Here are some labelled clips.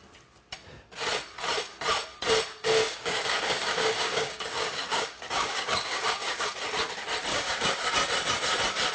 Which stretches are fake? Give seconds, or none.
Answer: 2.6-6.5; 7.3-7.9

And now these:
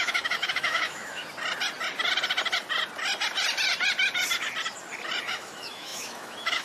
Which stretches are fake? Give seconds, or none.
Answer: 0.0-1.2; 5.2-6.6